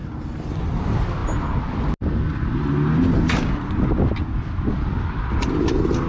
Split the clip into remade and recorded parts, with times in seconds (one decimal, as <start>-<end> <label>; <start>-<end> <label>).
0.0-0.6 remade; 0.6-6.1 recorded